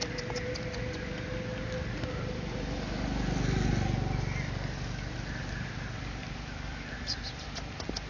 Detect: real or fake real